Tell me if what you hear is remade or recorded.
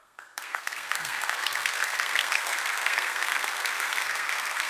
remade